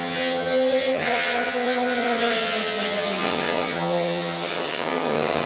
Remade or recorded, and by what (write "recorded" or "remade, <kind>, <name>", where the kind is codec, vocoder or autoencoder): remade, vocoder, HiFi-GAN